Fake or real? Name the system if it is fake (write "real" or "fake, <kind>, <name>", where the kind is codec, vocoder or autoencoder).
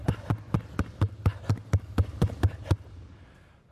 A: real